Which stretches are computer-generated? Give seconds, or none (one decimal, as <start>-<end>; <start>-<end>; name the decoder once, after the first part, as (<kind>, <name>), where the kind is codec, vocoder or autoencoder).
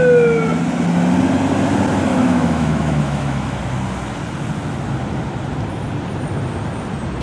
2.1-3.6 (autoencoder, DAC-VAE)